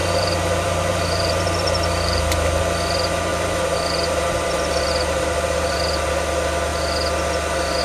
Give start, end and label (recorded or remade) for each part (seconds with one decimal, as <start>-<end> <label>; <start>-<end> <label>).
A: 0.0-2.6 remade; 2.6-3.3 recorded; 3.3-6.1 remade; 6.1-7.8 recorded